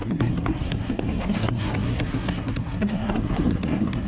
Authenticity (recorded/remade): remade